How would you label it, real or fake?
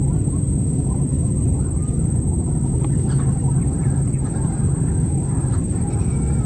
real